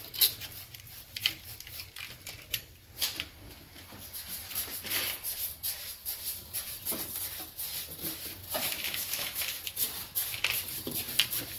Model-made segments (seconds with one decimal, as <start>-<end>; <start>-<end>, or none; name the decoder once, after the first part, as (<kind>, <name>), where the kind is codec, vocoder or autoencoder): 8.6-9.4 (autoencoder, DAC-VAE)

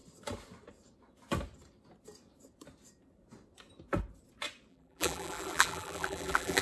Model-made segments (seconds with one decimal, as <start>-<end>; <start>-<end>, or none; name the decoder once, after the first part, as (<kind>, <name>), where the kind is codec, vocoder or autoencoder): 4.7-6.6 (vocoder, BigVGAN v2)

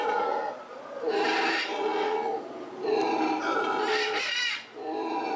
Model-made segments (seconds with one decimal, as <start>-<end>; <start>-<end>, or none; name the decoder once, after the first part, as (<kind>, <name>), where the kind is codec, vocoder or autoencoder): none

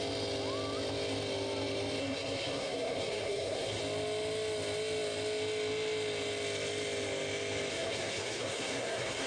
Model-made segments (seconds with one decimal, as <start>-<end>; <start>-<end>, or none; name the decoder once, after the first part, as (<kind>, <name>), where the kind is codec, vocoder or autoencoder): 2.0-3.8 (codec, SNAC); 7.7-9.3

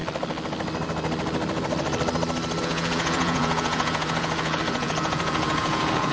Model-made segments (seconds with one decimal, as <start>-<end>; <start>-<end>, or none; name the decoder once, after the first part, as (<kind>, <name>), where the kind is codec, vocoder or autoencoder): 2.6-6.1 (vocoder, Vocos)

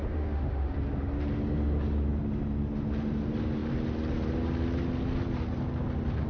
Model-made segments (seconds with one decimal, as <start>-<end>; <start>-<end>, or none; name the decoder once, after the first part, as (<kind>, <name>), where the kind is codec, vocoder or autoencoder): 0.0-0.7 (autoencoder, DAC-VAE)

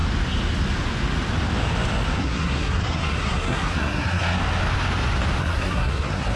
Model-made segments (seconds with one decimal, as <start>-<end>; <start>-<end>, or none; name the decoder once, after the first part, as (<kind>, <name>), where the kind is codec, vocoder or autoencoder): 2.2-4.4 (codec, SNAC); 5.4-6.4